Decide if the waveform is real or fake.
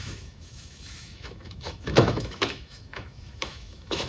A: fake